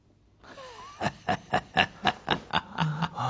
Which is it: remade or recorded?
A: recorded